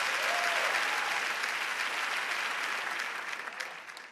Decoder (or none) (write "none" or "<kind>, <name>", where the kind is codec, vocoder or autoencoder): none